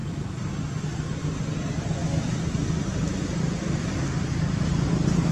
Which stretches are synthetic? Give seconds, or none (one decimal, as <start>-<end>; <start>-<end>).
2.0-5.3